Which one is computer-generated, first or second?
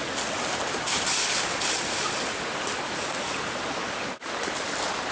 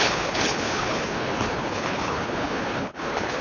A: second